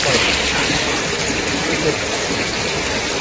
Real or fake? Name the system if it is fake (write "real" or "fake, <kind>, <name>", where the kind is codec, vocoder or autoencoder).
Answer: real